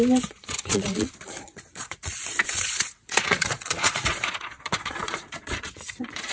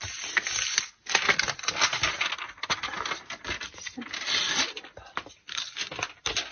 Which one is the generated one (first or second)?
first